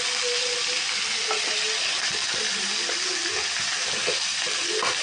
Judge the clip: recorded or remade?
recorded